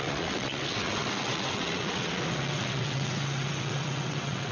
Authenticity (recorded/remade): remade